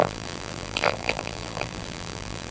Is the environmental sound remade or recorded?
remade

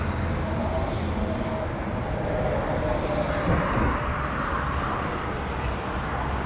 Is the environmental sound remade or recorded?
recorded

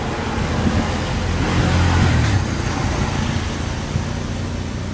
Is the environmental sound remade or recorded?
recorded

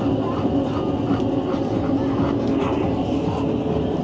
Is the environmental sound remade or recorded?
recorded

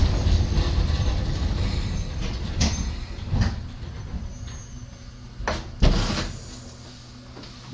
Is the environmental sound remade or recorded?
recorded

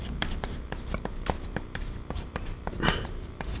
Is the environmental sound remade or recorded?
remade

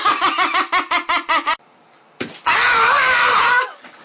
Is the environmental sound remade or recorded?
remade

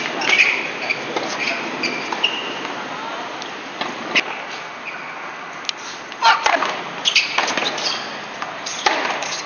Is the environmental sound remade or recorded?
recorded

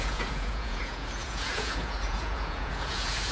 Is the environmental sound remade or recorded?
remade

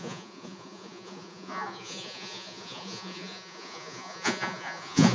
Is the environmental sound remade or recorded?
remade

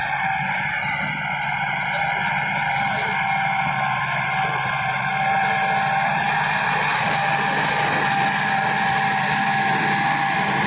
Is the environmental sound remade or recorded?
recorded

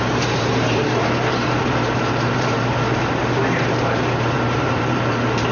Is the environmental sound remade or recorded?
remade